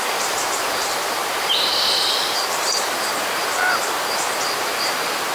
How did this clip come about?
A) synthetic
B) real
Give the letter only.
A